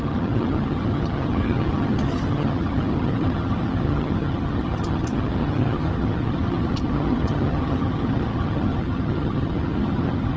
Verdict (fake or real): fake